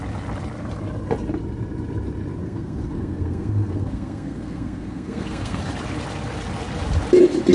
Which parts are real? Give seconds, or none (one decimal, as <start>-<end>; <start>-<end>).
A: 0.0-2.4; 5.7-7.5